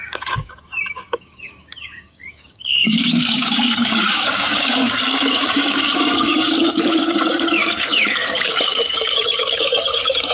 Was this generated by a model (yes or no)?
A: yes